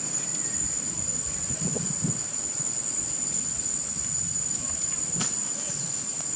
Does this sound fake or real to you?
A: real